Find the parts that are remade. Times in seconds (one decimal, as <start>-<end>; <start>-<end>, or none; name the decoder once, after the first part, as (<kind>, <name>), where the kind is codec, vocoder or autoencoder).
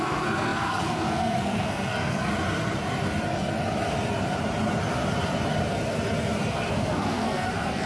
0.0-2.3 (codec, SNAC); 6.7-7.9